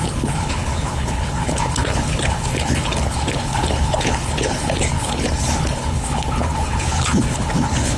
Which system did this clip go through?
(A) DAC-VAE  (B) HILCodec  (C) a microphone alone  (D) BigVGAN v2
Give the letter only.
B